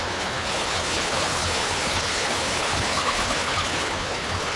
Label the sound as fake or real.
fake